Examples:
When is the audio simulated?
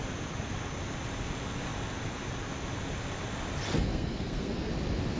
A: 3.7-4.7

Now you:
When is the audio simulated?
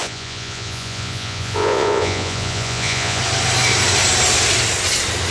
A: 0.0-3.2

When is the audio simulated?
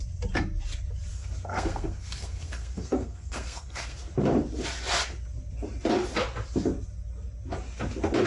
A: 1.1-4.1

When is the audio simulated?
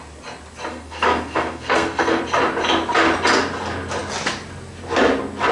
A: 0.7-2.2